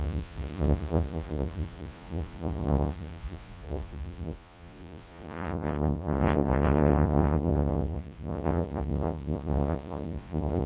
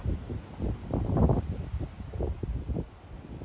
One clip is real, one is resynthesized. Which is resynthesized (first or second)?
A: first